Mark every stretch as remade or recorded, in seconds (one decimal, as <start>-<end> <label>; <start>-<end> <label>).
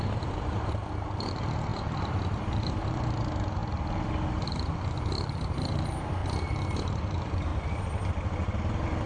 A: 0.0-3.6 remade; 3.6-5.0 recorded; 5.0-6.2 remade; 6.2-6.9 recorded; 6.9-7.5 remade; 7.5-8.4 recorded; 8.4-9.1 remade